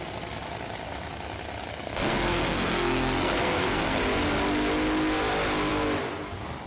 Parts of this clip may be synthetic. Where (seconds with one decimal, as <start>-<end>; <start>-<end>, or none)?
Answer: 1.7-4.0